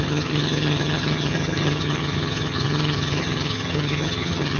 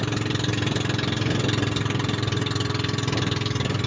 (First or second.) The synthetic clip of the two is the first